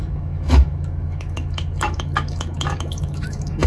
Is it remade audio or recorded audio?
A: remade